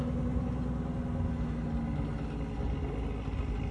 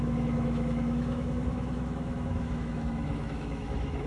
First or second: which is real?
first